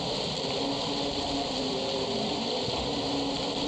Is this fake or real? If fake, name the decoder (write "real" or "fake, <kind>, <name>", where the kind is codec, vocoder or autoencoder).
real